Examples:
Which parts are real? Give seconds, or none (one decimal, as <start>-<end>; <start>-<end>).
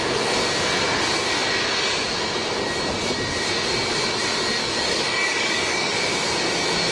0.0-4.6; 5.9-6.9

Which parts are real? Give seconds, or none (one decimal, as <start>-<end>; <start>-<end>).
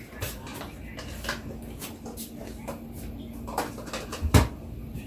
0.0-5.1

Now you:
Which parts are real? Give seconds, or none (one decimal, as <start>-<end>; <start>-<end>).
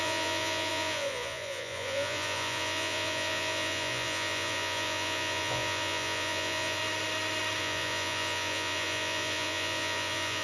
6.8-7.6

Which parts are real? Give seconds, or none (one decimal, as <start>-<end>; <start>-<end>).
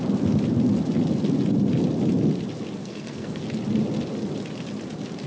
0.0-2.8; 3.4-5.3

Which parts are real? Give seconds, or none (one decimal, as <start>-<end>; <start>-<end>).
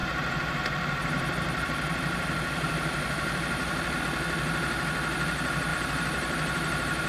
4.0-5.7